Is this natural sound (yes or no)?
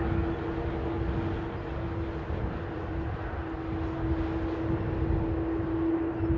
yes